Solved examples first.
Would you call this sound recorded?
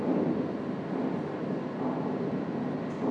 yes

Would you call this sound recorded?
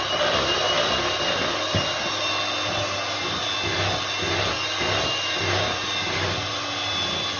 yes